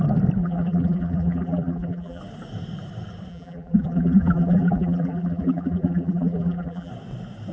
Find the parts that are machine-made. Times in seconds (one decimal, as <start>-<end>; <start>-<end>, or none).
0.4-2.2; 3.3-6.9